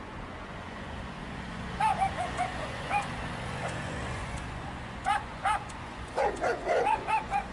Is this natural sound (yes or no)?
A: no